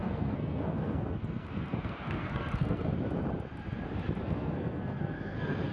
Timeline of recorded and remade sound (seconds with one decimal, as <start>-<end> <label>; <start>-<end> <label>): 0.0-2.9 remade; 2.9-4.2 recorded; 4.2-5.7 remade